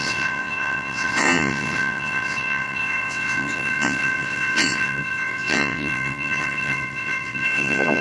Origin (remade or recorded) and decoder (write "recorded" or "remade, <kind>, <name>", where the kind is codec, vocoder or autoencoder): remade, vocoder, WaveNeXt